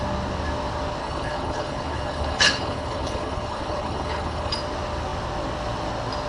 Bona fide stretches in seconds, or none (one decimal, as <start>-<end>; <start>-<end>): 0.0-1.0; 4.6-6.3